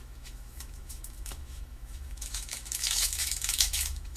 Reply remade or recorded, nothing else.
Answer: remade